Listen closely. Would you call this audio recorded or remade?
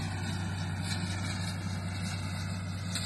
recorded